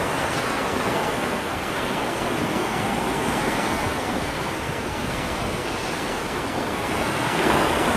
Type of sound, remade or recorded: remade